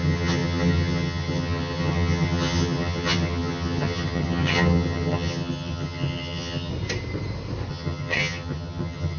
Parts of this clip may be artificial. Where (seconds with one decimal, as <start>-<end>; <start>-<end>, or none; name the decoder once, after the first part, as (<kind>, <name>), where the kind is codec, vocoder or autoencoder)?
0.0-6.7 (vocoder, HiFi-GAN); 7.7-9.2